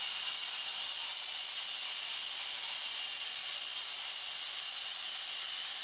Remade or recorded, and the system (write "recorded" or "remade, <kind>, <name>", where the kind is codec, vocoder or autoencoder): recorded